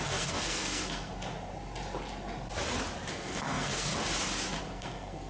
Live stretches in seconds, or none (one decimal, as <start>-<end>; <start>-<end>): 1.1-3.1; 3.9-4.6